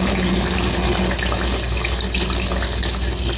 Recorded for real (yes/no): yes